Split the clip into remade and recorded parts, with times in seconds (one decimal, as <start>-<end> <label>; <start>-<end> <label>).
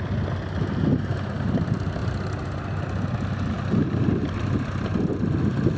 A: 0.0-5.8 recorded